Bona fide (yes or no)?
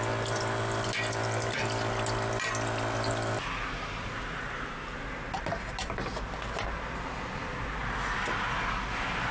yes